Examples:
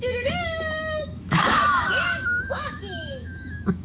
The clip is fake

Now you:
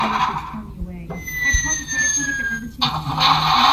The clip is real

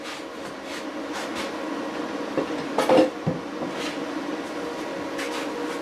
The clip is real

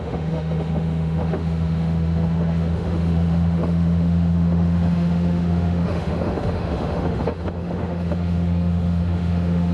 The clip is fake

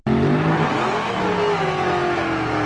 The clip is real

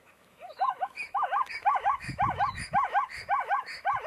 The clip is fake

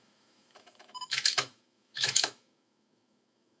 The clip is fake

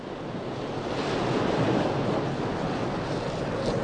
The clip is real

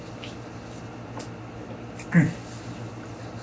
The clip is real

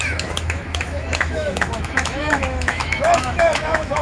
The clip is fake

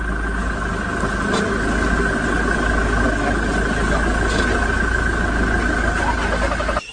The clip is real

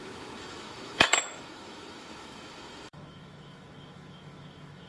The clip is fake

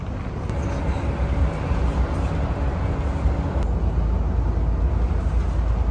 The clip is real